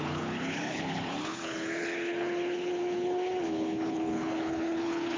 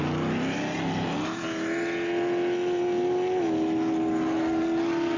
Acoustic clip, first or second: second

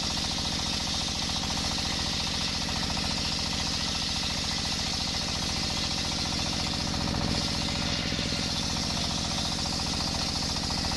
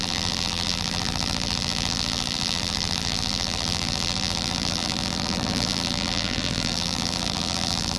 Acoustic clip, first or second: first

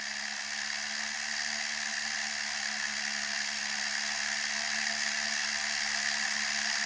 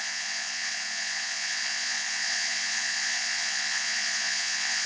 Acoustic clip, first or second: first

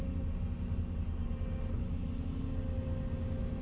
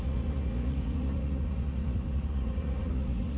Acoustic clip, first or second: first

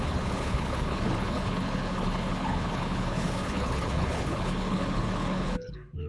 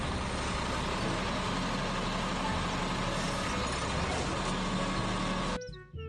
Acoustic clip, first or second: second